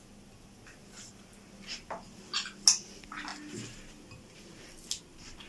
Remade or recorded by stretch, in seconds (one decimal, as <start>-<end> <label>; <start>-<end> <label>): 0.0-5.5 recorded